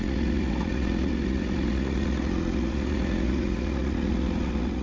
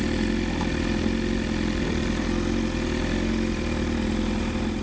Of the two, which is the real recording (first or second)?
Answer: second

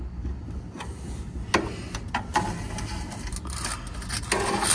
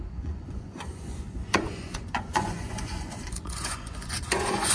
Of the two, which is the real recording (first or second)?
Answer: first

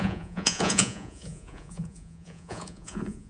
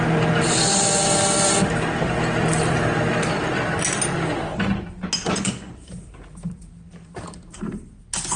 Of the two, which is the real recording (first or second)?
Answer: second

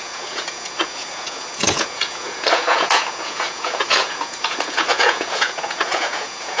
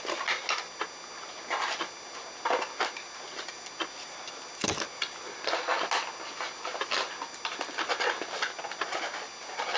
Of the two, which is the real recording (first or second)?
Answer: second